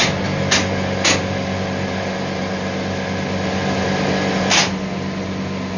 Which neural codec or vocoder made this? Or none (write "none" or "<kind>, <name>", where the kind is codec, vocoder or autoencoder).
none